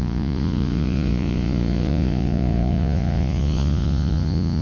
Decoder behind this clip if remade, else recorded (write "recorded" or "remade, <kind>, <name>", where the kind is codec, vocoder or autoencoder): remade, vocoder, Vocos